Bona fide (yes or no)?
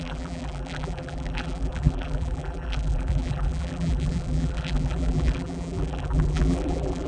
no